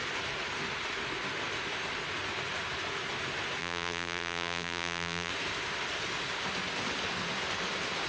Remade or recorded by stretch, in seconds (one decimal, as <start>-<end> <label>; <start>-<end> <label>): 0.0-3.6 recorded; 3.6-5.3 remade; 5.3-8.1 recorded